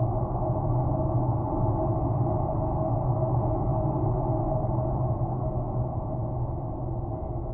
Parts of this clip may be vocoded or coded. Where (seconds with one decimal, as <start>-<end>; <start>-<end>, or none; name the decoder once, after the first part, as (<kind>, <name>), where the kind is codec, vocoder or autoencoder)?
none